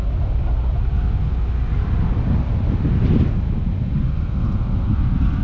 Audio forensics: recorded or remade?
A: recorded